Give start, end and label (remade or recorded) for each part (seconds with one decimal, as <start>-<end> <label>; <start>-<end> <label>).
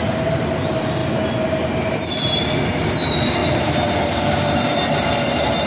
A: 0.0-5.7 recorded